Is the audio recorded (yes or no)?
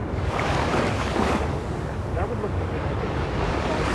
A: no